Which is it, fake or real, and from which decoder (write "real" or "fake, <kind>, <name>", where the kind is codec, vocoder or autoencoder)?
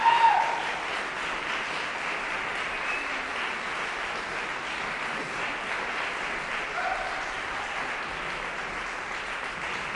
real